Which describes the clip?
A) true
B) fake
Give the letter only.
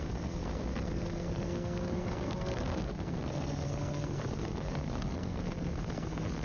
B